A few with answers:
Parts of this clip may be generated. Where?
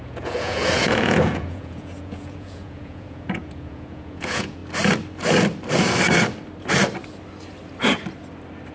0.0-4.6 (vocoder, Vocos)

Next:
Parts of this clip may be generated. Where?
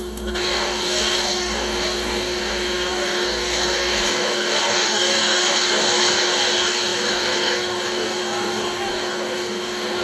0.0-10.0 (codec, DAC)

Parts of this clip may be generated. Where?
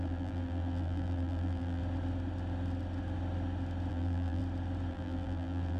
0.0-1.8 (vocoder, BigVGAN v2); 3.9-4.4; 4.9-5.8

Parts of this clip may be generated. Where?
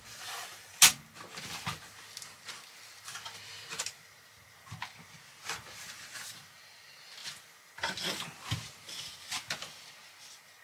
none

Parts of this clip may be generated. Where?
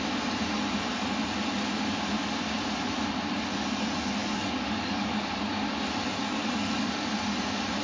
4.2-5.6 (codec, DAC); 6.2-6.8